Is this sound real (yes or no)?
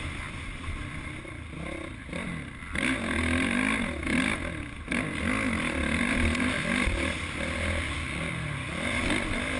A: yes